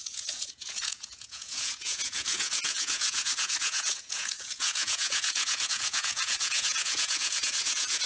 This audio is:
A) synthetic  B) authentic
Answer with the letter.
A